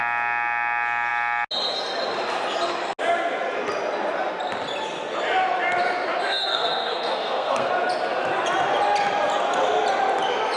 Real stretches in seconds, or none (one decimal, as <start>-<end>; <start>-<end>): 0.0-6.5; 7.7-10.6